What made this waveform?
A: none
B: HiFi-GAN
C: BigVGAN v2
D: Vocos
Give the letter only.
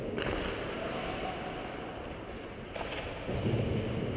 A